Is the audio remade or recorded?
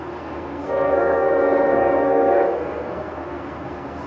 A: remade